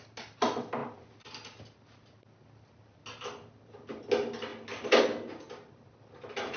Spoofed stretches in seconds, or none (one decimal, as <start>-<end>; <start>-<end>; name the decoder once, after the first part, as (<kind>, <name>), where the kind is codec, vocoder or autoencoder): none